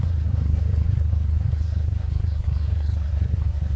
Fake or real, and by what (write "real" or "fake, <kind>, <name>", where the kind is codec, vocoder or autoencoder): fake, codec, SNAC